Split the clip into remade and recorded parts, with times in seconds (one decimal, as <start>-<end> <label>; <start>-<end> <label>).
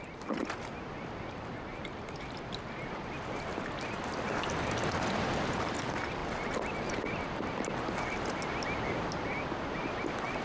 0.0-10.4 recorded